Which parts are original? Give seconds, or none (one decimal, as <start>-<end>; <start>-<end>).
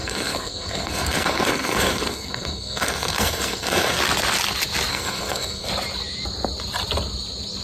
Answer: 4.0-4.9; 5.7-7.6